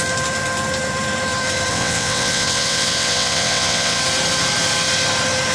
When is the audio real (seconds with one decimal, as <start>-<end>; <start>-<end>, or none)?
0.0-1.7; 4.0-5.5